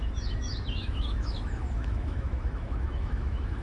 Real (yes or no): no